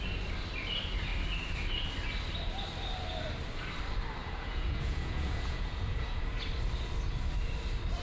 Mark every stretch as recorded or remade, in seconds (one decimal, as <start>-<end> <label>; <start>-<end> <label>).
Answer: 0.0-4.2 recorded; 4.2-6.3 remade; 6.3-8.0 recorded